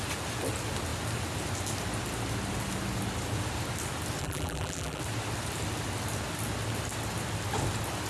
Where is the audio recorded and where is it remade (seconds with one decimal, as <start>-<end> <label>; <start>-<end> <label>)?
0.0-4.2 recorded; 4.2-5.0 remade; 5.0-8.1 recorded